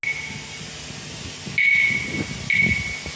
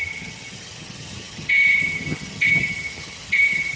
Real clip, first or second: first